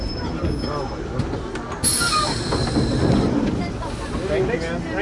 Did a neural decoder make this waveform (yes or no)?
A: no